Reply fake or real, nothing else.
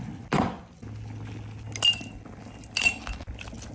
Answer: real